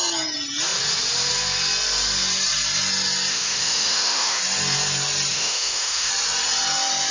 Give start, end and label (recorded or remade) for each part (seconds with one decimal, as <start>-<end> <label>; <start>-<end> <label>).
0.0-3.3 recorded; 3.3-4.4 remade; 4.4-5.3 recorded; 5.3-6.1 remade; 6.1-7.1 recorded